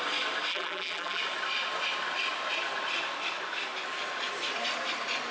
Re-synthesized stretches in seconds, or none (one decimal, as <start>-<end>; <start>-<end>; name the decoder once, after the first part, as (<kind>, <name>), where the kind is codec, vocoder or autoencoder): 0.5-1.2 (vocoder, BigVGAN v2)